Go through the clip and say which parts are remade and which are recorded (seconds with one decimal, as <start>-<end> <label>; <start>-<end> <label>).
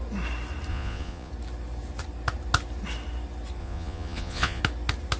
0.0-0.7 recorded; 0.7-1.3 remade; 1.3-3.6 recorded; 3.6-4.6 remade; 4.6-5.2 recorded